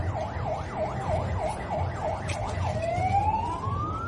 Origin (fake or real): real